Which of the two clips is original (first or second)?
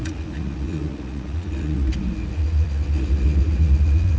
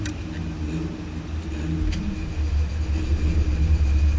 second